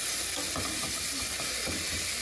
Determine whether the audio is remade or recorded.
recorded